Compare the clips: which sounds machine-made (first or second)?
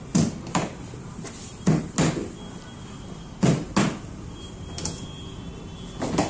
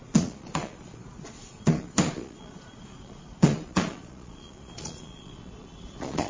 second